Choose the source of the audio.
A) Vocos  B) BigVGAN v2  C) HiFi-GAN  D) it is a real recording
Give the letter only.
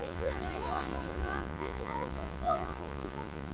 A